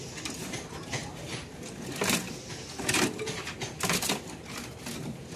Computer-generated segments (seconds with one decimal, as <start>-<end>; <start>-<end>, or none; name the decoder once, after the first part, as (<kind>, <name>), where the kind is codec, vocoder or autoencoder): none